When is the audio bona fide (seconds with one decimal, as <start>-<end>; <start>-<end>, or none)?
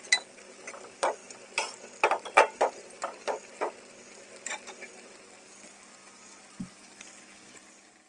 0.0-8.1